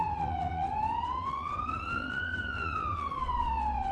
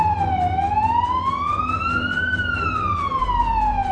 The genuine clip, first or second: second